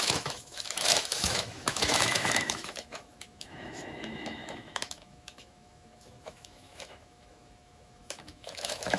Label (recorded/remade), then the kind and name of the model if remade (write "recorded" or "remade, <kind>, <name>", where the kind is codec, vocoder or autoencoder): remade, autoencoder, DAC-VAE